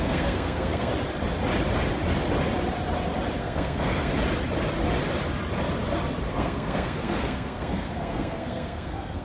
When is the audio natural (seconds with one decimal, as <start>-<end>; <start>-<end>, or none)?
0.9-3.4; 4.1-6.3